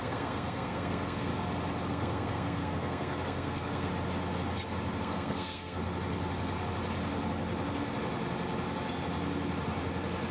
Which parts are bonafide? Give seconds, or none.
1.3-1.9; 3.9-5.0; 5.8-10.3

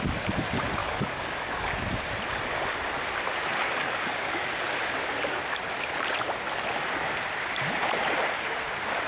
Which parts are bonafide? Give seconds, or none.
0.0-0.8; 1.7-3.5; 4.8-9.1

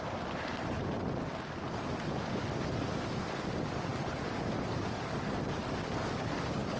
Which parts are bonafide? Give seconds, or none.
0.0-6.8

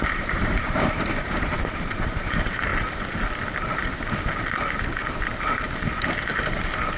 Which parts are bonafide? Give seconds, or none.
2.7-7.0